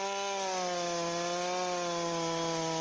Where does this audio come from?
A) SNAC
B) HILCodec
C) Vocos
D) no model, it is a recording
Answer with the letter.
D